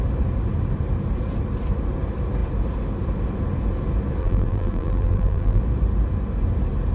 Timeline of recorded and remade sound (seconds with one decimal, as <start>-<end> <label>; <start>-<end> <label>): 0.0-4.2 recorded; 4.2-5.6 remade; 5.6-6.9 recorded